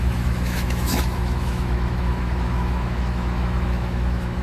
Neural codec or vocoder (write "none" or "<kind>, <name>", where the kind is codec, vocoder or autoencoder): autoencoder, DAC-VAE